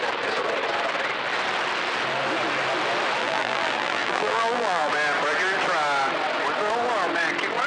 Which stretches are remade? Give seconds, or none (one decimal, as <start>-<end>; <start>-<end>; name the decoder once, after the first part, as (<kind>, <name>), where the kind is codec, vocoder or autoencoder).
3.2-4.9 (vocoder, BigVGAN v2)